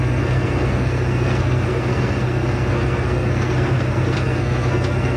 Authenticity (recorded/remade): remade